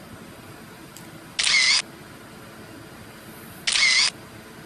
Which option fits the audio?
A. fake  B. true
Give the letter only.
B